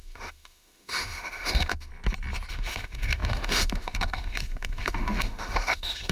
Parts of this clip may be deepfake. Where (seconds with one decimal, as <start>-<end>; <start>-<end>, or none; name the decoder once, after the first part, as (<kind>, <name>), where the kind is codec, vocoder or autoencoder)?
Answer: 0.0-1.9 (autoencoder, DAC-VAE); 2.5-6.1